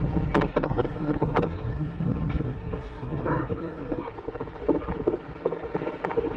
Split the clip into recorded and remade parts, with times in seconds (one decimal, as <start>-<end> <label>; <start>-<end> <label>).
0.0-0.5 recorded; 0.5-4.1 remade; 4.1-6.4 recorded

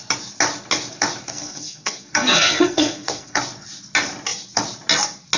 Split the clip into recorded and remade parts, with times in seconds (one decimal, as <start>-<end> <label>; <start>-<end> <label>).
0.0-1.3 recorded; 1.3-3.4 remade; 3.4-5.4 recorded

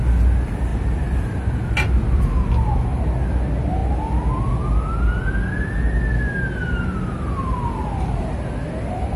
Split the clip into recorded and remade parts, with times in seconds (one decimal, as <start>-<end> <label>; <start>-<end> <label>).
0.0-9.2 recorded